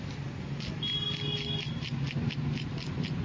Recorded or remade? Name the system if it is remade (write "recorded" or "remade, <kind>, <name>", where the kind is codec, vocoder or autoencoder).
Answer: recorded